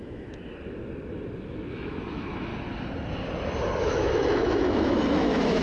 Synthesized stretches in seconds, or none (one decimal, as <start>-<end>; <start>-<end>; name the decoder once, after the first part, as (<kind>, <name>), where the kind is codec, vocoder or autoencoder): 0.0-0.4 (autoencoder, DAC-VAE); 1.7-2.5; 3.8-5.6